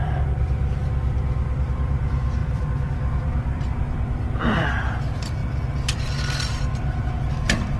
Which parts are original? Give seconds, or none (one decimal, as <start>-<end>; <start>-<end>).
none